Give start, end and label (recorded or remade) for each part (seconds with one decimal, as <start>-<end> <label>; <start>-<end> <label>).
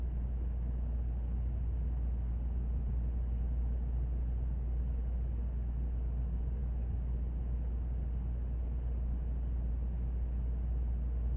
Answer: 0.0-11.4 recorded